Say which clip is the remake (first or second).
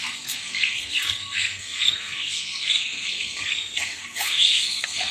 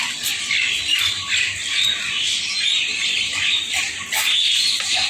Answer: first